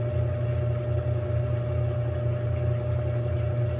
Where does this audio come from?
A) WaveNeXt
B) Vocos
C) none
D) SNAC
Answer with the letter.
C